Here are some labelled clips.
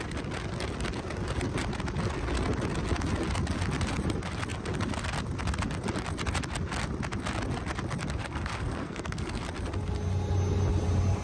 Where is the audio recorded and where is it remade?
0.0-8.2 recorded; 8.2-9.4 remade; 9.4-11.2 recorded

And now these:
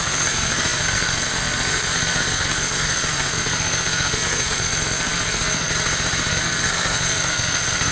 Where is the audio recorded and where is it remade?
0.0-5.7 remade; 5.7-6.3 recorded; 6.3-7.9 remade

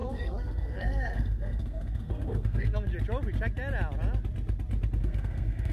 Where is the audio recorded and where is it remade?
0.0-2.9 remade; 2.9-5.0 recorded; 5.0-5.7 remade

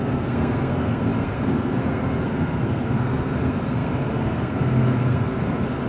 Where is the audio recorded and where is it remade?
0.0-5.9 remade

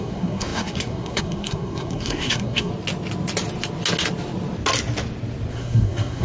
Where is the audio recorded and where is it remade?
0.0-2.7 remade; 2.7-5.5 recorded; 5.5-6.2 remade

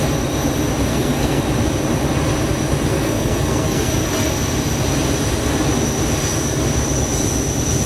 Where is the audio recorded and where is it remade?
0.0-0.9 recorded; 0.9-1.4 remade; 1.4-2.9 recorded; 2.9-3.9 remade; 3.9-7.9 recorded